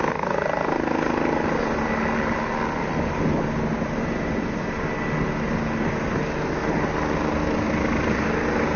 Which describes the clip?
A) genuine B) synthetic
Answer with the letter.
A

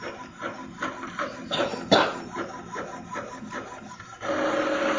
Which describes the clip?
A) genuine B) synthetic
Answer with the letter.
A